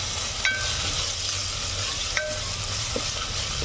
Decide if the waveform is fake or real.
real